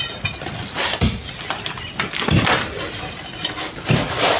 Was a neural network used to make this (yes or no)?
no